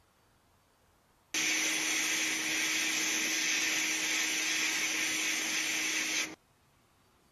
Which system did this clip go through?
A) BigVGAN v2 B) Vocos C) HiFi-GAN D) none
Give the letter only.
D